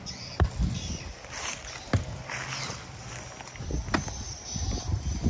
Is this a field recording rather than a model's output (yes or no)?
yes